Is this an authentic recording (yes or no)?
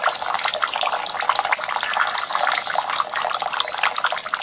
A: yes